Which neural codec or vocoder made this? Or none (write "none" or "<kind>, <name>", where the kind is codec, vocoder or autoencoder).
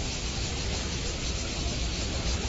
vocoder, BigVGAN v2